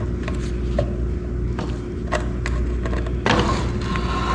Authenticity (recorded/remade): recorded